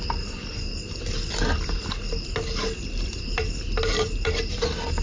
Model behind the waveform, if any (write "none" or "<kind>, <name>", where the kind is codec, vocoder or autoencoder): none